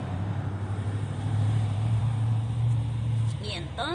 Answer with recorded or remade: remade